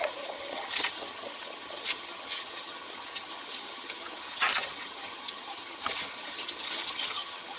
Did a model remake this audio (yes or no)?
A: yes